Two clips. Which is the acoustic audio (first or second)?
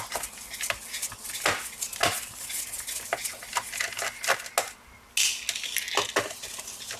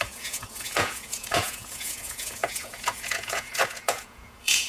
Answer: first